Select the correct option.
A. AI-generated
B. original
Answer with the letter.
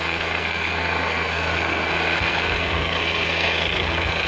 A